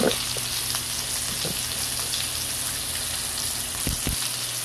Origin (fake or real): real